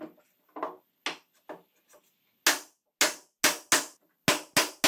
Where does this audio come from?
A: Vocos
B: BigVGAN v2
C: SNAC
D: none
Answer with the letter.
D